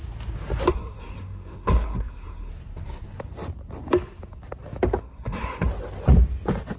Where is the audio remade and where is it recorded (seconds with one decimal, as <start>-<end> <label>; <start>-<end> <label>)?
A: 0.0-0.7 recorded; 0.7-2.5 remade; 2.5-5.0 recorded; 5.0-5.7 remade; 5.7-6.8 recorded